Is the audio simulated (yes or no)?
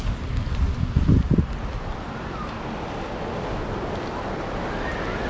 no